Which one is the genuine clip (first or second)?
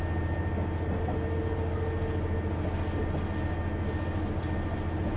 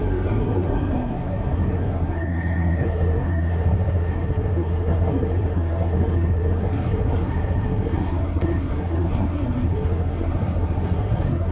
first